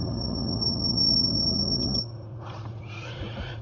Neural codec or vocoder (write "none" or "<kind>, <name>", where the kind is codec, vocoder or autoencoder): vocoder, Vocos